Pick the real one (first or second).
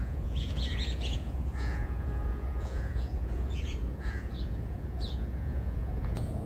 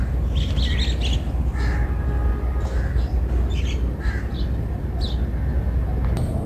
second